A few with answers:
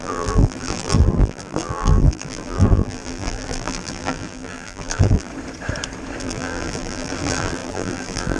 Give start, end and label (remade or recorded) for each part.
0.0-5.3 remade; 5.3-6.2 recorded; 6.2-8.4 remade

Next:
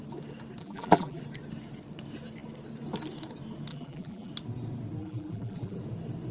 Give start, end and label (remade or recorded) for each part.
0.0-0.6 recorded; 0.6-1.2 remade; 1.2-3.7 recorded; 3.7-4.3 remade; 4.3-5.0 recorded; 5.0-5.8 remade; 5.8-6.3 recorded

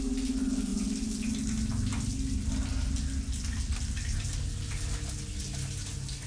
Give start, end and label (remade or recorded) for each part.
0.0-6.3 recorded